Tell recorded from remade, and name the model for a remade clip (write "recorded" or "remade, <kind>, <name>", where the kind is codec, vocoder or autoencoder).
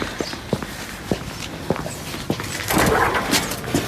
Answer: recorded